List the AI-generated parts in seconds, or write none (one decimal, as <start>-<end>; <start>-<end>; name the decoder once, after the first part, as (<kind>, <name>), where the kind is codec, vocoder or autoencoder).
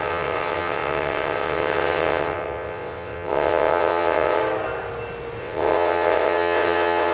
0.0-4.4 (vocoder, WaveNeXt); 5.4-7.1